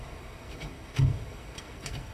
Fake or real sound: fake